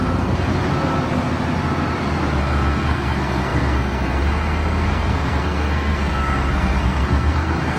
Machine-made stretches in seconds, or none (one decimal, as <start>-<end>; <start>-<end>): 0.0-0.5; 2.4-7.8